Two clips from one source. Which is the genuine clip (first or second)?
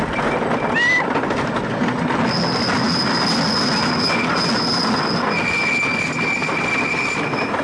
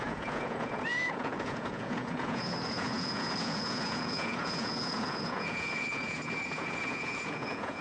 first